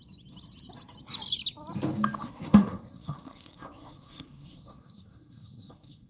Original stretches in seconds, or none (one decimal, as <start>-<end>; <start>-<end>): 0.0-2.2